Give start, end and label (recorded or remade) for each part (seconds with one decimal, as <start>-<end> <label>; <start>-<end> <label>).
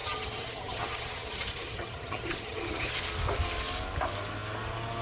0.0-3.0 remade; 3.0-5.0 recorded